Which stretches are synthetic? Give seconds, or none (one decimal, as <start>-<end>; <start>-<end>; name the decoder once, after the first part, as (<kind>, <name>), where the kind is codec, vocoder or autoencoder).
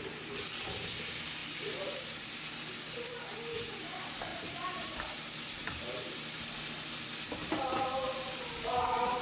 4.3-5.0 (vocoder, BigVGAN v2); 5.6-6.5; 7.4-9.2